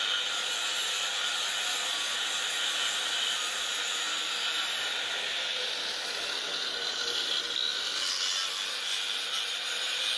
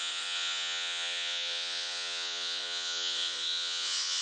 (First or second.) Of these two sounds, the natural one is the first